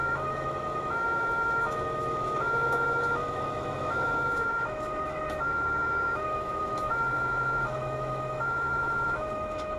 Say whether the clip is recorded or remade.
remade